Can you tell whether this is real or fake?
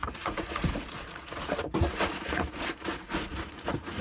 fake